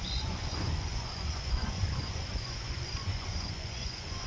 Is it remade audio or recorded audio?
remade